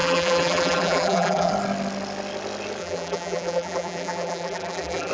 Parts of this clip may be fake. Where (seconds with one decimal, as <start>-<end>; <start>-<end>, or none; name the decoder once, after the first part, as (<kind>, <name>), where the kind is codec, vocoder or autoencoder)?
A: 0.0-1.5 (vocoder, BigVGAN v2); 2.8-5.1